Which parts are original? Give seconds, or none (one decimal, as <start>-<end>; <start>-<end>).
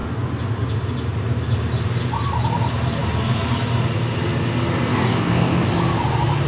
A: 0.0-4.9; 5.7-6.5